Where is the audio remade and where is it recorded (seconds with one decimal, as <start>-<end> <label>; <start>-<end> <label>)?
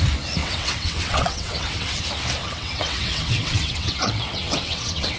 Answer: 0.0-0.4 recorded; 0.4-2.0 remade; 2.0-2.4 recorded; 2.4-5.2 remade